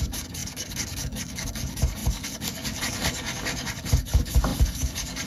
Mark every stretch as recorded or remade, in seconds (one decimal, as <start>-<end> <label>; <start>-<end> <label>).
0.0-5.3 remade